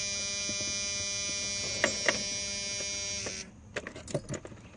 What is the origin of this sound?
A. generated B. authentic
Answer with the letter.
B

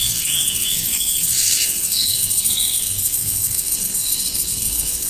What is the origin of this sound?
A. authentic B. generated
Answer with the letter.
B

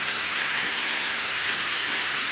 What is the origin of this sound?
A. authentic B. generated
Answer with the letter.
B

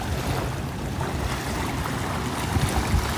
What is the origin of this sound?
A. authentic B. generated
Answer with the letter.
A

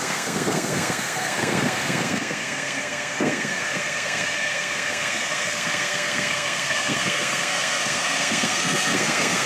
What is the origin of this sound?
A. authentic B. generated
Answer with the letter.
B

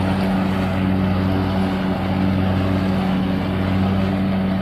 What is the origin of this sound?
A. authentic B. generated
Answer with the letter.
A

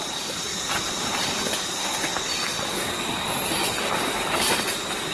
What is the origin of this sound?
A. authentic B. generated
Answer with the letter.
A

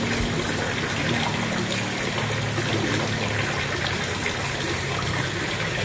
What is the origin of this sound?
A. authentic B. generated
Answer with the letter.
A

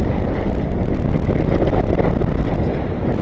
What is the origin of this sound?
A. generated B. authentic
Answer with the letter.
B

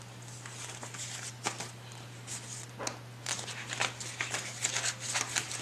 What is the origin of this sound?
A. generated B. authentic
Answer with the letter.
B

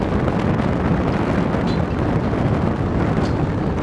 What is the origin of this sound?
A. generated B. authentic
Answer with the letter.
B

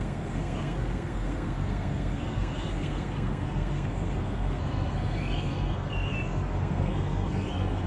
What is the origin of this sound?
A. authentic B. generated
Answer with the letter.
B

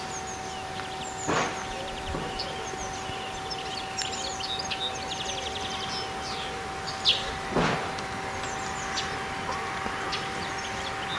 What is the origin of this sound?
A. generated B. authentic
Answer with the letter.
B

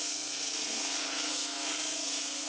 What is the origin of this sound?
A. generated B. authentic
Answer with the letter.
A